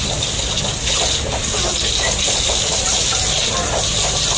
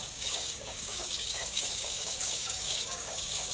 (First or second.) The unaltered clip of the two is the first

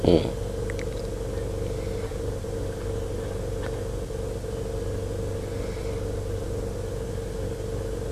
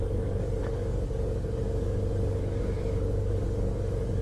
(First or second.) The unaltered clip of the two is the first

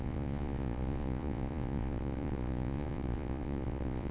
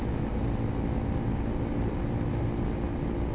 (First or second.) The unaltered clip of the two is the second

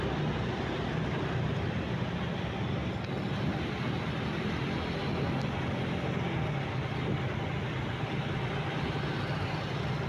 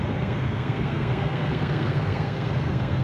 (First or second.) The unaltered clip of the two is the first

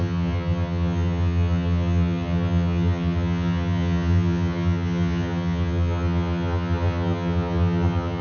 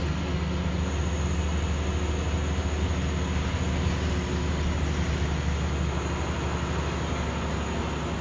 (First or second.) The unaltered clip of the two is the second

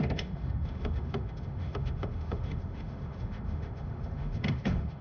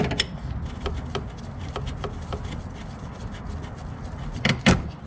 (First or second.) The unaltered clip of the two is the second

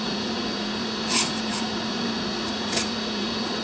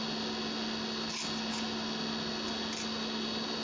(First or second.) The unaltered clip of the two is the second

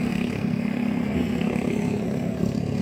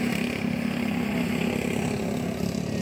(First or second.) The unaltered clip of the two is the second